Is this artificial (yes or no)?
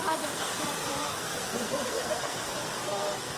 yes